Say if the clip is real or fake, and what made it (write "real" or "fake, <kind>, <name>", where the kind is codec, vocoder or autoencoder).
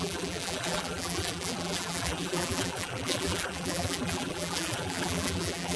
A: fake, vocoder, BigVGAN v2